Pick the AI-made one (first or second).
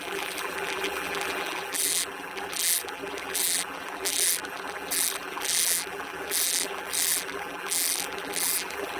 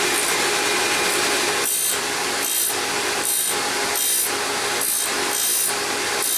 first